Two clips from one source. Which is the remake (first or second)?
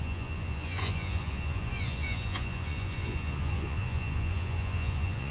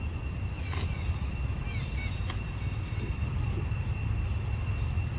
first